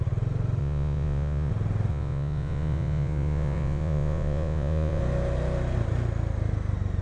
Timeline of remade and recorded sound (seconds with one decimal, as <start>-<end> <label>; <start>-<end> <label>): 0.0-0.6 recorded; 0.6-1.5 remade; 1.5-1.9 recorded; 1.9-5.0 remade; 5.0-7.0 recorded